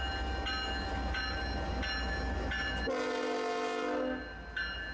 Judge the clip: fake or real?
real